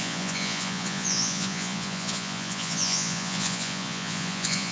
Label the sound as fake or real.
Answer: fake